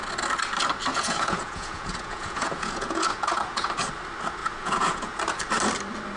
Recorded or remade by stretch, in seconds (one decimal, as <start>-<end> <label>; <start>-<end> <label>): 0.0-0.9 recorded; 0.9-3.7 remade; 3.7-4.4 recorded; 4.4-5.2 remade; 5.2-6.2 recorded